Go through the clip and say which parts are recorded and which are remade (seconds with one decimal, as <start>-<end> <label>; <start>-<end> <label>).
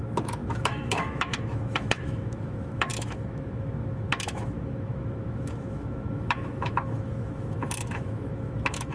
0.0-8.9 remade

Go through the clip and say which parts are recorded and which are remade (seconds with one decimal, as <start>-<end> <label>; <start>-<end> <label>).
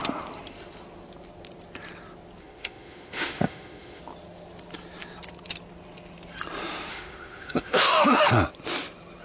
0.0-2.4 recorded; 2.4-4.0 remade; 4.0-6.9 recorded; 6.9-8.3 remade; 8.3-9.2 recorded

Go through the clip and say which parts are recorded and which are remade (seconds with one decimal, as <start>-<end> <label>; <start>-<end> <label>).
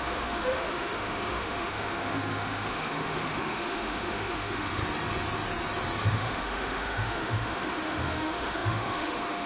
0.0-4.8 remade; 4.8-6.1 recorded; 6.1-9.5 remade